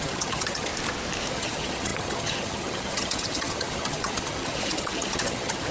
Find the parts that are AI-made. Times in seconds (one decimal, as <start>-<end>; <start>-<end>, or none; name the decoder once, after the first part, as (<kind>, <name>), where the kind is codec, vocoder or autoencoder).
0.0-0.7 (vocoder, HiFi-GAN); 1.3-5.7